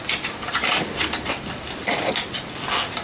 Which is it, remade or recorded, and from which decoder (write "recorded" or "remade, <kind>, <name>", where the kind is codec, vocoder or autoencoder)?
recorded